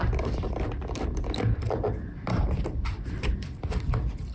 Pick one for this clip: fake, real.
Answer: fake